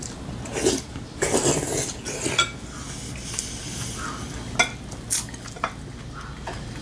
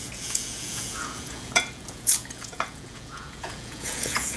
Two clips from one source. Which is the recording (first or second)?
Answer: first